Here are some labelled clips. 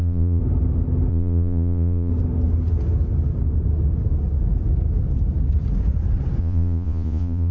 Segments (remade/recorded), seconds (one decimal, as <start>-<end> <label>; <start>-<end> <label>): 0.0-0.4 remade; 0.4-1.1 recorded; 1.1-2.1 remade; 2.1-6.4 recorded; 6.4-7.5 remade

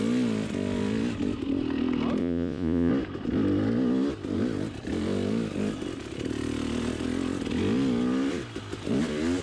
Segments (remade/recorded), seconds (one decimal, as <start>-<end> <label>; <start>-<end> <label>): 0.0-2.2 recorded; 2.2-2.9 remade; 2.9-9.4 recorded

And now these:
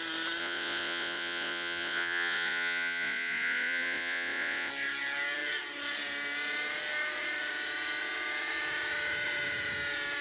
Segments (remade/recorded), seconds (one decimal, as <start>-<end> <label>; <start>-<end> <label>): 0.0-0.4 recorded; 0.4-4.7 remade; 4.7-10.2 recorded

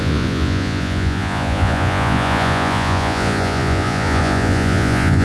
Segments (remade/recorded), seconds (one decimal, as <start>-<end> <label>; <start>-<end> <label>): 0.0-5.2 remade

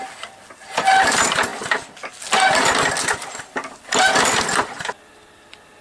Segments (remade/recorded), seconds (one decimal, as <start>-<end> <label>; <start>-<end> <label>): 0.0-5.8 recorded

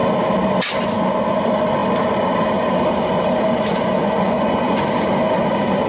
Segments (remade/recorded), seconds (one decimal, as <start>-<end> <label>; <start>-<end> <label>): 0.0-3.7 recorded; 3.7-4.9 remade; 4.9-5.9 recorded

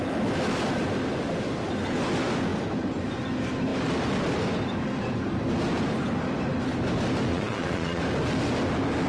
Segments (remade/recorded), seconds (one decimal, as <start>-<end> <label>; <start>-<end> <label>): 0.0-7.3 recorded; 7.3-8.0 remade; 8.0-9.1 recorded